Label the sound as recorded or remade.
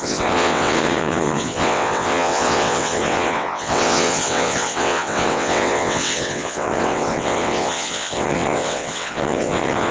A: remade